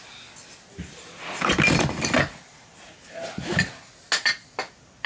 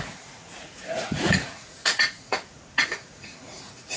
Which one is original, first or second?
first